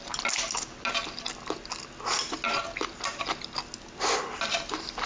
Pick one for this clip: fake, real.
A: real